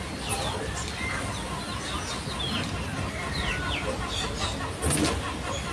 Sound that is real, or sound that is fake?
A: real